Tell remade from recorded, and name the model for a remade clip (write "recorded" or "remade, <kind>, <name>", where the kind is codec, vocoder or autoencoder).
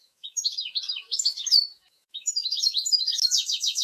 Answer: remade, autoencoder, DAC-VAE